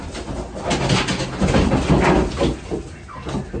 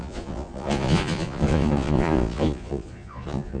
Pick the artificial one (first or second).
second